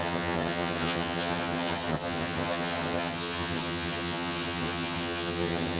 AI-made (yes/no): yes